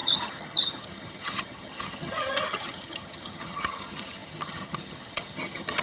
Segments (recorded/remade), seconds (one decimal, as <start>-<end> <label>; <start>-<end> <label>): 0.0-5.8 remade